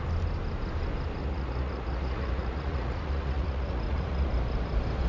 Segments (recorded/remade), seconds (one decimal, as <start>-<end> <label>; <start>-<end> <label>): 0.0-1.2 recorded; 1.2-4.3 remade; 4.3-5.1 recorded